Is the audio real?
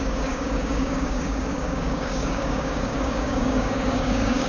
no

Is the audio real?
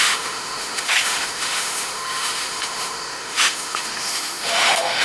no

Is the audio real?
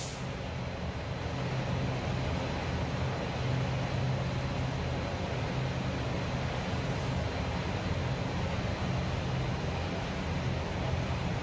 yes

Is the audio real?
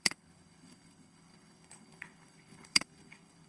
no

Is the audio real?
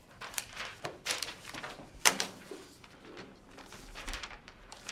no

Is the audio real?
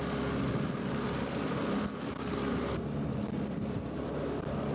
yes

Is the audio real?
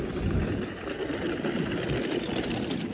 yes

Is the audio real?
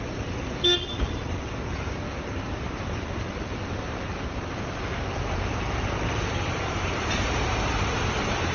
no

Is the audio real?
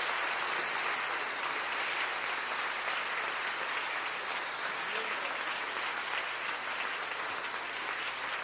yes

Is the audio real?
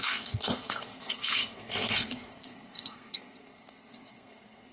no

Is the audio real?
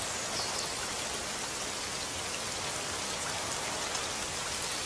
yes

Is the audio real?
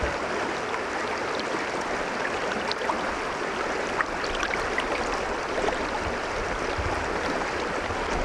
yes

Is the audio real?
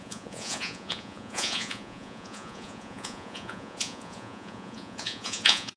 no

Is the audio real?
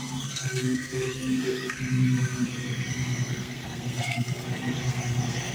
no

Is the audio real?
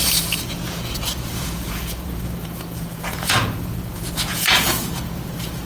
no